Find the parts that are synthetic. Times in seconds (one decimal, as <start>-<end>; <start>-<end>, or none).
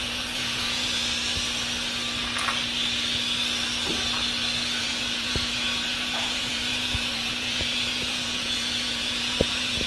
0.0-0.9; 4.8-9.9